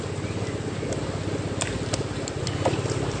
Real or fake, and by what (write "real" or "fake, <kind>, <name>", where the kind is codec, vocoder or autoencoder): real